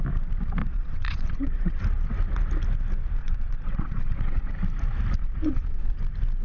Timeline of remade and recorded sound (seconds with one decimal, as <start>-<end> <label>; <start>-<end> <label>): 0.0-0.6 recorded; 0.6-1.8 remade; 1.8-3.2 recorded; 3.2-4.5 remade; 4.5-5.2 recorded; 5.2-6.0 remade; 6.0-6.4 recorded